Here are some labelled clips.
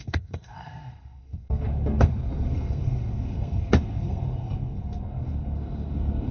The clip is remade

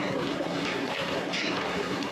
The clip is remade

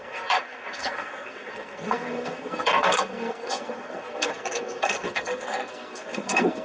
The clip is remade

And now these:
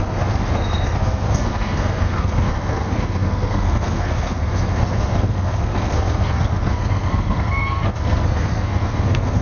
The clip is remade